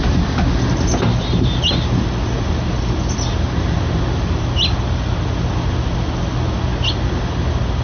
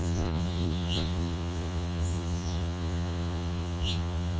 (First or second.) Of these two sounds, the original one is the first